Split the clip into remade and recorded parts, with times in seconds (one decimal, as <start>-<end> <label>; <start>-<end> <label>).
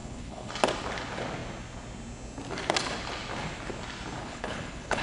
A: 0.0-0.5 remade; 0.5-4.2 recorded; 4.2-5.0 remade